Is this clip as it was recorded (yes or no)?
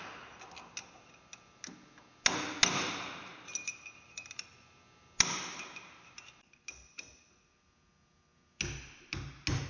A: yes